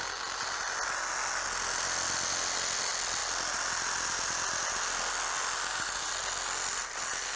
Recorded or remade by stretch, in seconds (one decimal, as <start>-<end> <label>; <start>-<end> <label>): 0.0-7.4 recorded